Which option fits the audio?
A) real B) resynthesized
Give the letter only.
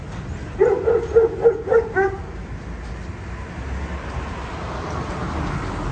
A